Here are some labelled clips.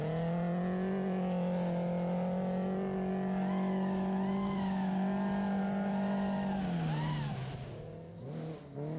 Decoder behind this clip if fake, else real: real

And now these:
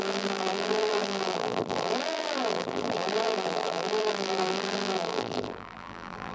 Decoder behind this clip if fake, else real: fake, vocoder, BigVGAN v2